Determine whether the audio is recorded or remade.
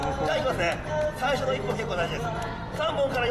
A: recorded